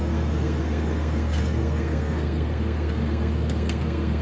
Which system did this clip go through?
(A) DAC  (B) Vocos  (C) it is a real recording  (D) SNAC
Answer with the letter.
D